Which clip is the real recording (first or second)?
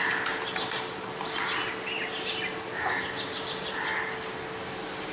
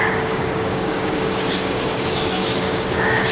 first